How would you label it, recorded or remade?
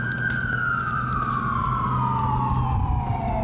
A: recorded